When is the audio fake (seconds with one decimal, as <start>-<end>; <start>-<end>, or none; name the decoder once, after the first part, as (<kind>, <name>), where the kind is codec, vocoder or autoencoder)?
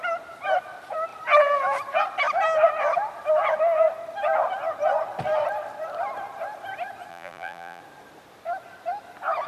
7.1-7.8 (vocoder, BigVGAN v2)